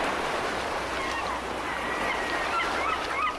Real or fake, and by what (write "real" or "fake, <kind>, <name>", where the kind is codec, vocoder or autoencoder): fake, vocoder, BigVGAN v2